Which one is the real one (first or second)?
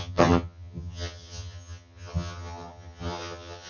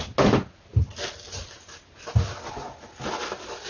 second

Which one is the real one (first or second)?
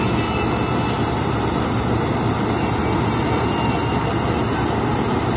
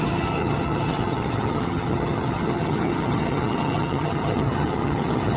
first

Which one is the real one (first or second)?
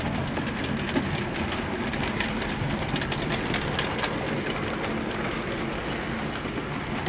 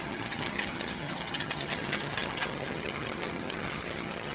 first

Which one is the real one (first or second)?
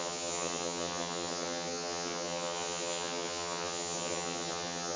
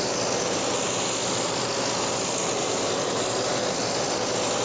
second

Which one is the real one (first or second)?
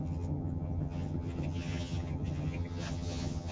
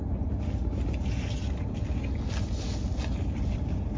second